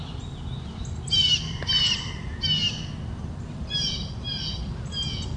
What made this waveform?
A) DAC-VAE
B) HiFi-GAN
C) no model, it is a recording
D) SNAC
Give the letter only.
C